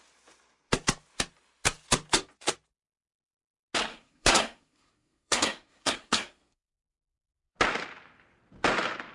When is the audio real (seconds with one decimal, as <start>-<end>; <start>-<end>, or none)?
0.0-3.9; 7.5-9.1